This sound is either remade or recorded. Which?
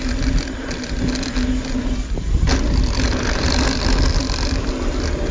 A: recorded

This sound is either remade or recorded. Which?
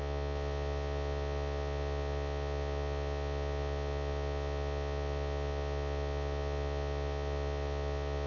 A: recorded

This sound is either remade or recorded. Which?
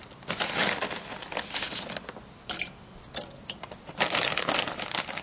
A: recorded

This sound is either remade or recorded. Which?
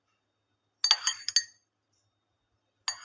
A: recorded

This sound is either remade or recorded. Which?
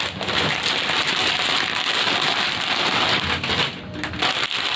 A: recorded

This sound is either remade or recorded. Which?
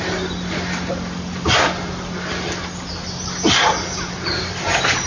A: recorded